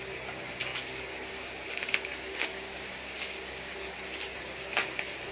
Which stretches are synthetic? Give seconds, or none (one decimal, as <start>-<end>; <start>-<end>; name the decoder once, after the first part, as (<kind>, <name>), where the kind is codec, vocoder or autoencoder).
0.0-5.3 (codec, DAC)